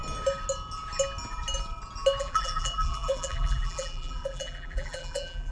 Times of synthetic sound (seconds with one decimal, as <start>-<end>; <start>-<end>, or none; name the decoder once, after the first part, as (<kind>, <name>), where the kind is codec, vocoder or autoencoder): 2.2-5.5 (vocoder, BigVGAN v2)